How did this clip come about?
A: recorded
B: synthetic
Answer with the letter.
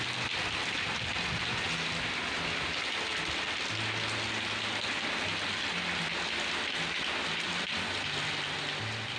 A